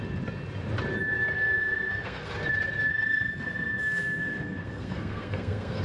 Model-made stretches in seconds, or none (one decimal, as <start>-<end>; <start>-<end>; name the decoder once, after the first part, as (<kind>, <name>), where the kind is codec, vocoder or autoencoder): 1.3-2.3 (codec, SNAC); 2.9-5.8